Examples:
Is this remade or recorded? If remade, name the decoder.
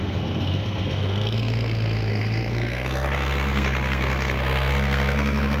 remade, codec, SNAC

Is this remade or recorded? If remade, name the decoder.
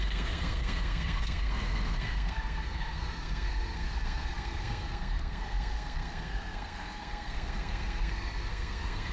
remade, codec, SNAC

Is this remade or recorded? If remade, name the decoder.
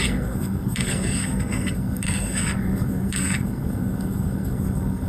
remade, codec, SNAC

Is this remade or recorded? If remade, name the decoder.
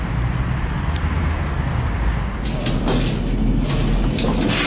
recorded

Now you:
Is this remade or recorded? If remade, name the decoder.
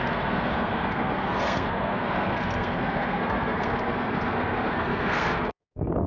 remade, codec, SNAC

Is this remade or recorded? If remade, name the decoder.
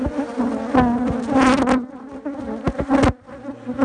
recorded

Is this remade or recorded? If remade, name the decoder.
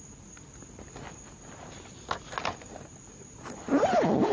recorded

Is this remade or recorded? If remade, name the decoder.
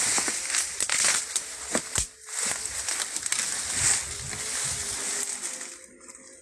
recorded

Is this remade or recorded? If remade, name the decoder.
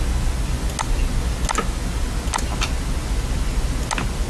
recorded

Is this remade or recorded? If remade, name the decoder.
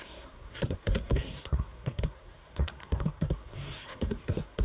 remade, codec, SNAC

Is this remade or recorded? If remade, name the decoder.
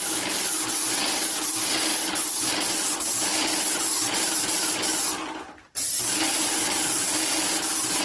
recorded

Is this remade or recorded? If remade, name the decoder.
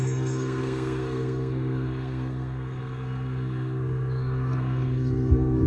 remade, codec, SNAC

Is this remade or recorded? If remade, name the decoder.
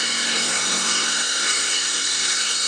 remade, codec, SNAC